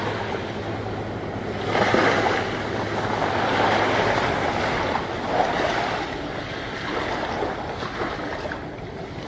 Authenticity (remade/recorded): recorded